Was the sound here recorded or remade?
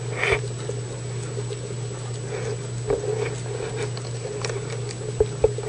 recorded